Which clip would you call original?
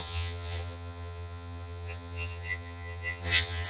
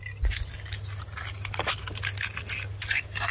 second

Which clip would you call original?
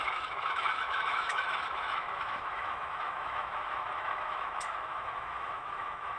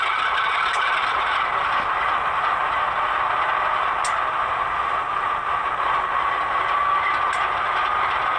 second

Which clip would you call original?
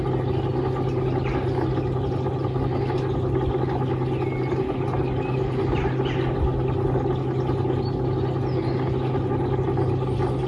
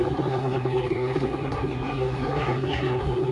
first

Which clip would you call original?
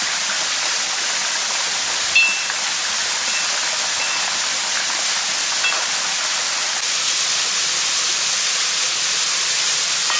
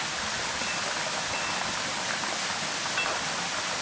first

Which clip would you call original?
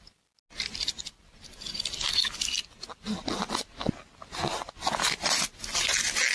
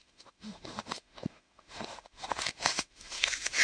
first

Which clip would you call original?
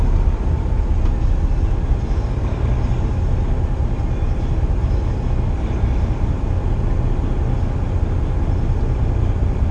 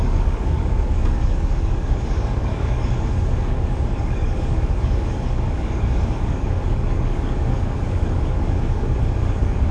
first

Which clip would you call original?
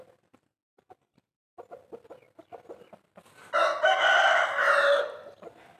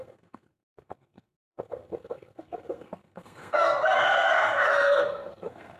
first